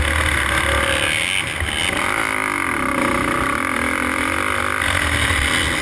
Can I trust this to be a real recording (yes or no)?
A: yes